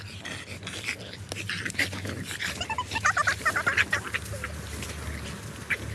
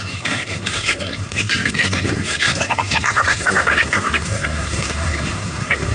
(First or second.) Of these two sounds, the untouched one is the first